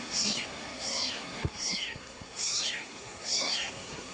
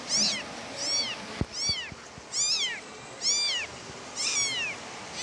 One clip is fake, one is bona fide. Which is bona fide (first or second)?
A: second